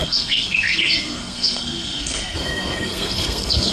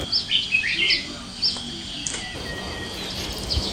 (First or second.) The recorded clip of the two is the second